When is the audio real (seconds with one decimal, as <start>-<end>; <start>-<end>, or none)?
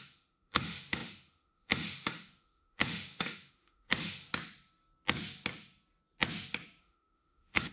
4.3-6.8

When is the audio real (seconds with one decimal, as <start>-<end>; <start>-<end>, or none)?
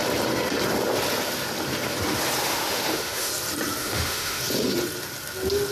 0.0-2.4; 3.3-3.8; 4.4-5.7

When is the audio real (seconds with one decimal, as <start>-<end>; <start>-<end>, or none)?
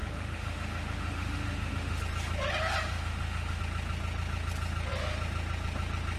2.0-2.9; 3.6-6.2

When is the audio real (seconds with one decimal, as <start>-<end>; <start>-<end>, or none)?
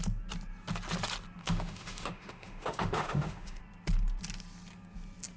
0.0-1.4; 3.6-5.4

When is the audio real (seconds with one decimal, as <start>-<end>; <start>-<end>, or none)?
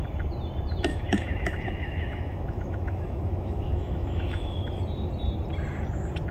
0.0-0.9; 4.7-6.3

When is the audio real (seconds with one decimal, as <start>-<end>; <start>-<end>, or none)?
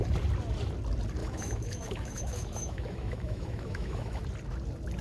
0.0-1.2; 4.2-5.0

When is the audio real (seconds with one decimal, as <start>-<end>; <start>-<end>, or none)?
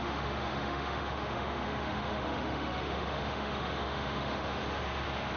4.6-5.4